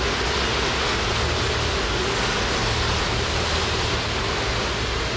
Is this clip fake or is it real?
real